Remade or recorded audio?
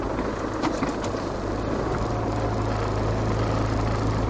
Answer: recorded